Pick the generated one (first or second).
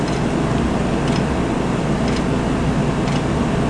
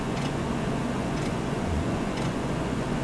second